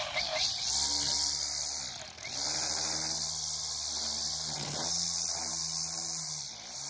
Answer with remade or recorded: recorded